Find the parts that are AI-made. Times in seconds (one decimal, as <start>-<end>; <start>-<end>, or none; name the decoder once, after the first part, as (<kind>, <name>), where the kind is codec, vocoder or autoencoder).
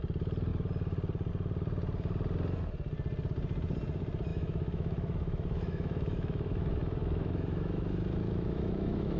4.3-9.2 (autoencoder, DAC-VAE)